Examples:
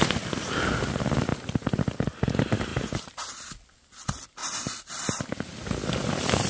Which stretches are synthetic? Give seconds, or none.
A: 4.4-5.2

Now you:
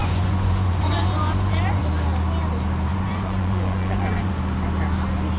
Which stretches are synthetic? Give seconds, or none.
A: 0.0-1.8; 2.9-4.3

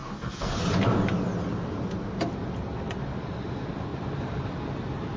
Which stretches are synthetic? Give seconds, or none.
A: 0.0-0.6

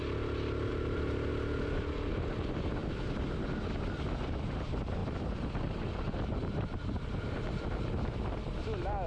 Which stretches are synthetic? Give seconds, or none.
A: 0.7-1.3; 2.8-3.3; 5.0-7.1